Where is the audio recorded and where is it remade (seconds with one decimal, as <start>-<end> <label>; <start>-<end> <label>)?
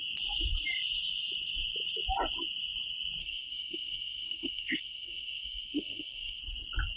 0.0-3.2 recorded; 3.2-6.4 remade; 6.4-7.0 recorded